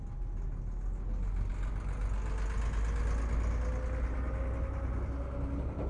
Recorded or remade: recorded